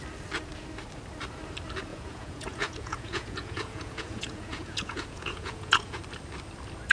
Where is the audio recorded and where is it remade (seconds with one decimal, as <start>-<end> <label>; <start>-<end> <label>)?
0.0-1.9 recorded; 1.9-6.0 remade; 6.0-6.9 recorded